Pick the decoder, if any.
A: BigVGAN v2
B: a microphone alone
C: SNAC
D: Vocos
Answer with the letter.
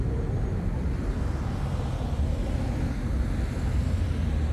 B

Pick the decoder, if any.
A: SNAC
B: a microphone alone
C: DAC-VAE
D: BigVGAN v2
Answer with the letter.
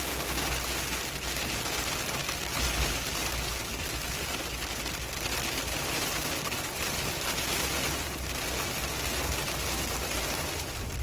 B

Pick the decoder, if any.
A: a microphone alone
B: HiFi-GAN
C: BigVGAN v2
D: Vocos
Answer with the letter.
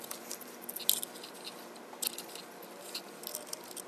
C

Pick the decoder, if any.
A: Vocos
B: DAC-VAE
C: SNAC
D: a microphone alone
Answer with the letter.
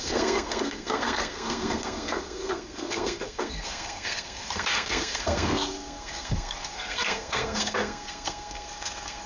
C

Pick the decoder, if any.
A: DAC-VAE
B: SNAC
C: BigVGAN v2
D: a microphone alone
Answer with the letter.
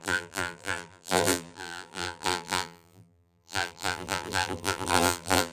C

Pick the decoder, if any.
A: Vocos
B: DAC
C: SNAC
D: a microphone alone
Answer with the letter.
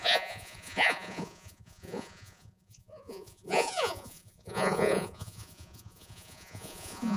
A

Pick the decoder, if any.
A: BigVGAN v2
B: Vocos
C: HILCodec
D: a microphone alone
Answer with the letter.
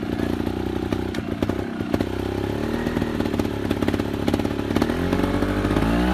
D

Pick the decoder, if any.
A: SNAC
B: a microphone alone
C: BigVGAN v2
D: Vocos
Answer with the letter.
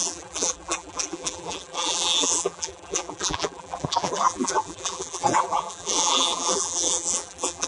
C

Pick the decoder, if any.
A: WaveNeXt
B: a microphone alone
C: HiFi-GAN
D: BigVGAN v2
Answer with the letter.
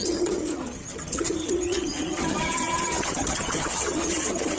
C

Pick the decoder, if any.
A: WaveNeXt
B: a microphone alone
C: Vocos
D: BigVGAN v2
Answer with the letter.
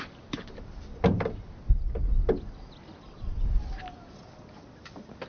B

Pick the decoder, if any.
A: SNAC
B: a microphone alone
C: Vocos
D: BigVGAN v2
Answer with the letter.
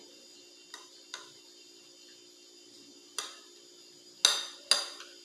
B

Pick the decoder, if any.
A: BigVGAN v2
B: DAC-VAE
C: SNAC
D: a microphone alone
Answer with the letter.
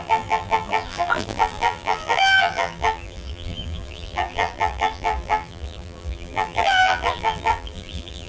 A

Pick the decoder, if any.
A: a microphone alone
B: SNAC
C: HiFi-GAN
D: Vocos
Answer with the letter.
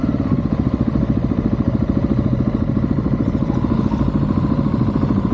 A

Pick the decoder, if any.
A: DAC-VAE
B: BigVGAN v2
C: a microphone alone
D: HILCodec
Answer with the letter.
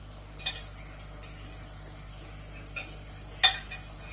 C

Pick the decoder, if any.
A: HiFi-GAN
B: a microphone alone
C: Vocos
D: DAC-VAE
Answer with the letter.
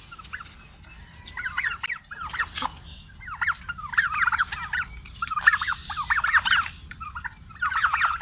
B